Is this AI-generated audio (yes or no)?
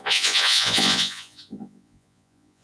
yes